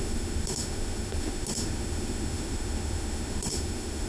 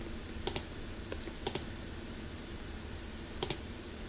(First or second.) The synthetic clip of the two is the first